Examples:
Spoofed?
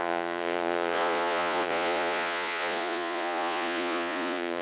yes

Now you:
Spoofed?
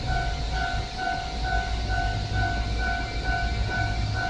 no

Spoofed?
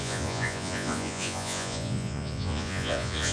yes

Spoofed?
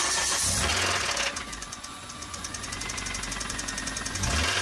yes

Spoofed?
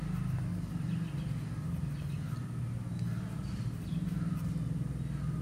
no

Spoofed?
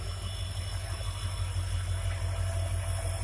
no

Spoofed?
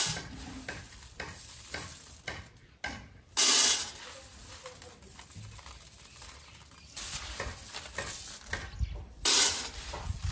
no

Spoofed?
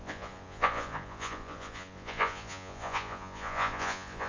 yes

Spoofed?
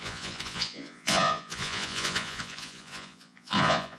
yes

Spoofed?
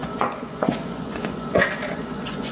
yes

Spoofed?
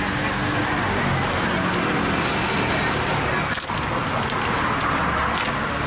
no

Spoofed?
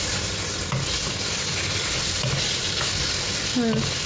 no